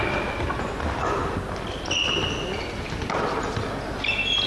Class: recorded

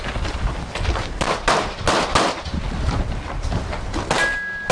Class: recorded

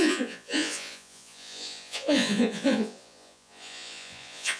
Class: remade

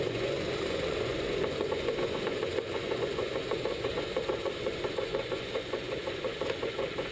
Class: remade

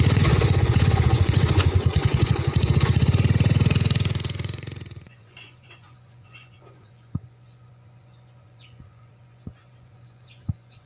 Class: remade